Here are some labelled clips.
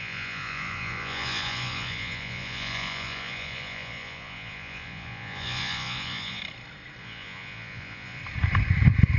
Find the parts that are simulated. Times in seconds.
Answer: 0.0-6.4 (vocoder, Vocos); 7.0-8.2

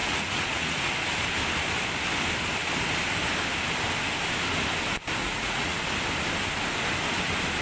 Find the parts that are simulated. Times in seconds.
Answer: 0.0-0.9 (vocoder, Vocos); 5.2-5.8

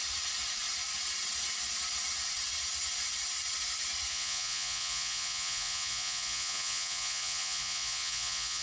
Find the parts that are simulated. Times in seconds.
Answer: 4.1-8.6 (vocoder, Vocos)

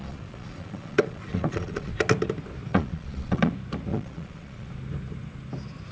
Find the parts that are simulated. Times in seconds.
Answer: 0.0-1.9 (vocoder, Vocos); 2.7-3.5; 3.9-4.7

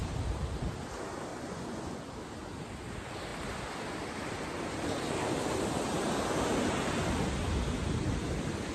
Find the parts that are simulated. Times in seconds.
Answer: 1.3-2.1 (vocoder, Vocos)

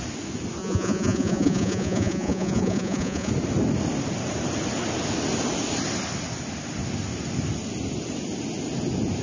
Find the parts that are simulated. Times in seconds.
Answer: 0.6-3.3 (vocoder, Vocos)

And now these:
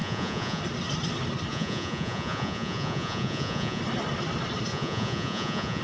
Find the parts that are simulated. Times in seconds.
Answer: 0.0-0.6 (vocoder, Vocos); 1.5-3.8; 4.7-5.8

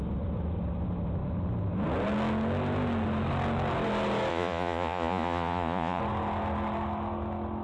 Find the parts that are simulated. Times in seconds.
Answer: 4.3-6.0 (vocoder, Vocos)